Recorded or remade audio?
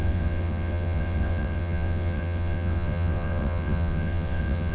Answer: remade